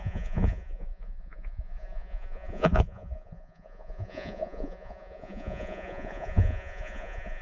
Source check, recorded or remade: remade